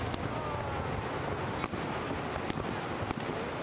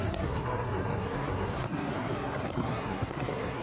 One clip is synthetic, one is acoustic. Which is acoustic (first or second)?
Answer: first